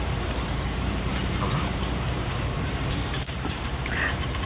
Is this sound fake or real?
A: fake